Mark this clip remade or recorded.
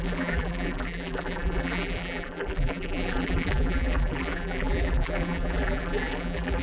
remade